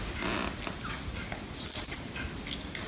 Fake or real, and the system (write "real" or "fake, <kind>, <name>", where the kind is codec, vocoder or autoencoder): real